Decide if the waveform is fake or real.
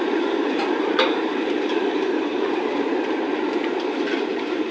fake